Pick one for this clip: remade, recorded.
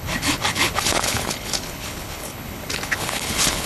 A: remade